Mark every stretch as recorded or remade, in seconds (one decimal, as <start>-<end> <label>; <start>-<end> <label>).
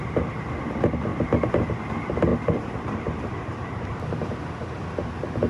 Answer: 0.0-2.3 recorded; 2.3-3.9 remade; 3.9-5.5 recorded